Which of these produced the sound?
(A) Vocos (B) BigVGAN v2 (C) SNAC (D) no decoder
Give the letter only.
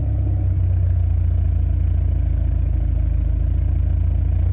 D